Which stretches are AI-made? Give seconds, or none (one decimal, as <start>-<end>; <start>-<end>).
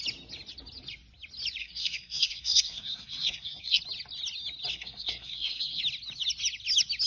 1.6-3.8; 4.7-5.8